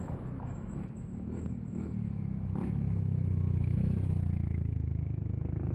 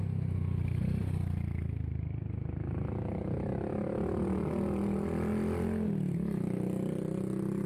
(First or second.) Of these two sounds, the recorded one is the second